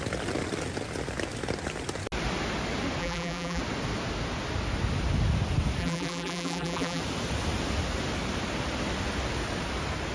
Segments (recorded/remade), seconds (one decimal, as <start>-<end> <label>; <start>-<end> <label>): 0.0-3.0 recorded; 3.0-3.6 remade; 3.6-5.8 recorded; 5.8-7.0 remade; 7.0-10.1 recorded